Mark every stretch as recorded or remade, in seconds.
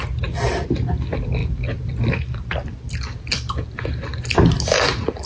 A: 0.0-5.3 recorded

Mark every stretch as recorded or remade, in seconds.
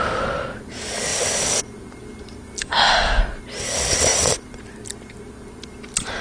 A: 0.0-2.6 recorded; 2.6-3.2 remade; 3.2-6.2 recorded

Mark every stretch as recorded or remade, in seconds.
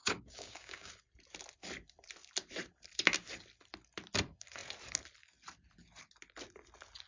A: 0.0-0.9 remade; 0.9-7.1 recorded